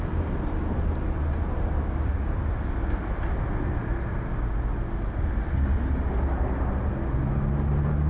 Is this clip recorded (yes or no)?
yes